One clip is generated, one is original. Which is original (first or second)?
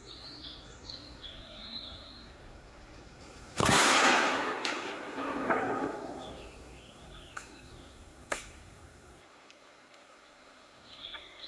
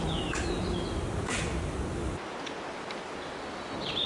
second